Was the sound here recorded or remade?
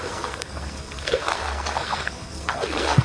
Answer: remade